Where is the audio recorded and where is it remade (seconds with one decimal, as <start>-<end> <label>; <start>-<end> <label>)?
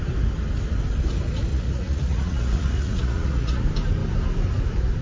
0.0-1.5 recorded; 1.5-3.6 remade; 3.6-5.0 recorded